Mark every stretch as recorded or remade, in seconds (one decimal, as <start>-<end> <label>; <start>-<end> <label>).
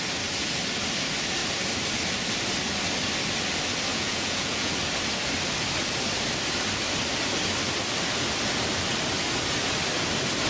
0.0-3.9 recorded; 3.9-4.7 remade; 4.7-10.5 recorded